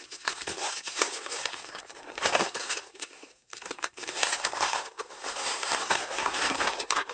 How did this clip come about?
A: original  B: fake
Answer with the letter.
B